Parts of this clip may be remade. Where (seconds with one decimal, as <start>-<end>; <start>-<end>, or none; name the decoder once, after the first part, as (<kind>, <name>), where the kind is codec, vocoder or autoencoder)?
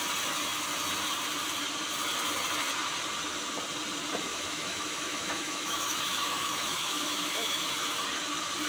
4.3-7.7 (autoencoder, DAC-VAE)